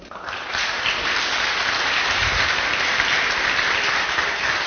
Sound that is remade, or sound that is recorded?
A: recorded